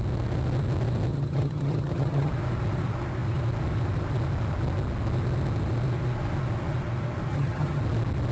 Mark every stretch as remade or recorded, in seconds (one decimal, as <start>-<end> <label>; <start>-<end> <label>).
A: 0.0-1.1 recorded; 1.1-2.3 remade; 2.3-7.3 recorded; 7.3-7.8 remade; 7.8-8.3 recorded